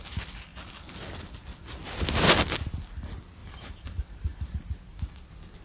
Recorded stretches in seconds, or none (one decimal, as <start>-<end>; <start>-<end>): 0.0-3.4; 4.7-5.6

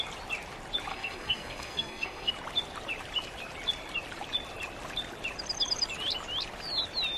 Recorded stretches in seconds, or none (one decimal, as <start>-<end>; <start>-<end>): 0.0-0.9; 2.3-7.2

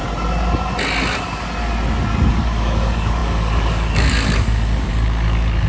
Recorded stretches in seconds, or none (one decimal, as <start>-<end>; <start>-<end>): 0.0-2.3

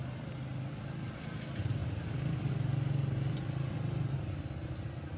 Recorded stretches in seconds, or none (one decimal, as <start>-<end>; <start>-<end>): 0.0-5.2

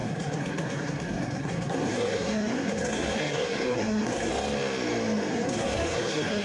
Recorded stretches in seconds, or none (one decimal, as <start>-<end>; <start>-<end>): 4.3-5.3